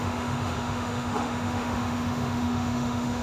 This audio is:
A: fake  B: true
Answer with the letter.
A